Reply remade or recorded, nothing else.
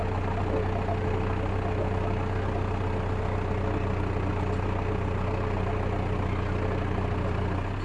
recorded